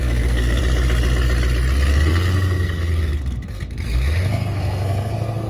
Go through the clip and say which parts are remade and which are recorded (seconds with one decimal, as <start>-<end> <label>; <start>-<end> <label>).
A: 0.0-0.6 remade; 0.6-1.9 recorded; 1.9-5.5 remade